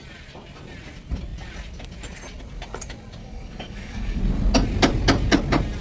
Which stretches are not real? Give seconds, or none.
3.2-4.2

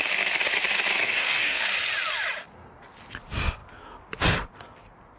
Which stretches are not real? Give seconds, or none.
1.0-1.6

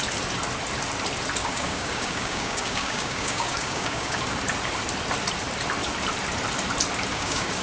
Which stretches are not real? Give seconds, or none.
1.4-4.2; 7.1-7.6

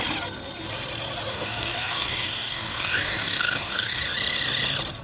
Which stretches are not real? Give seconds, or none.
1.3-4.0

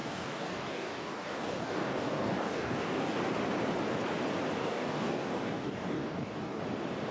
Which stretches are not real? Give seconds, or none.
0.0-3.2; 4.6-6.6

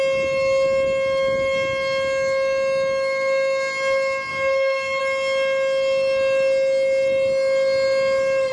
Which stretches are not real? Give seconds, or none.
4.3-5.0

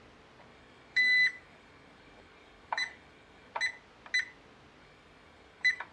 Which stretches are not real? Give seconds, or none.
0.5-3.5; 4.8-5.9

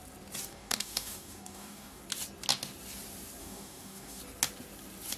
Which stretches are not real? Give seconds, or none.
0.5-2.0; 3.4-4.2